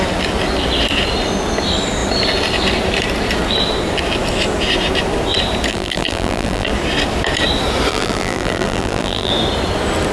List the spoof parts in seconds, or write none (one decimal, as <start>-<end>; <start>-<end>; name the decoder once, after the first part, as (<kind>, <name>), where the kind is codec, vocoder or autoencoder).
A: 5.7-6.7 (vocoder, BigVGAN v2); 7.9-9.3